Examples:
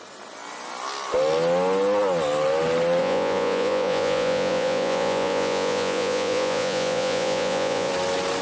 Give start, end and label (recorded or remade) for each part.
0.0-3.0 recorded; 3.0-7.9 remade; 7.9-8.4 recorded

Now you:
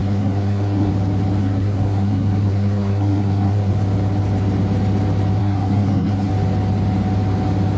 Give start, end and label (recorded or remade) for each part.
0.0-0.9 remade; 0.9-1.4 recorded; 1.4-3.7 remade; 3.7-5.4 recorded; 5.4-6.3 remade; 6.3-7.8 recorded

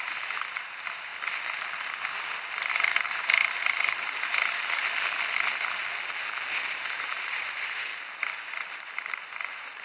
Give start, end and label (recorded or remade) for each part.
0.0-1.1 remade; 1.1-2.7 recorded; 2.7-4.8 remade; 4.8-6.7 recorded; 6.7-7.9 remade; 7.9-9.2 recorded; 9.2-9.8 remade